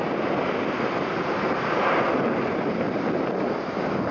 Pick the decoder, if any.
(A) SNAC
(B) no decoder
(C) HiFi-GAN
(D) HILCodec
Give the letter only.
B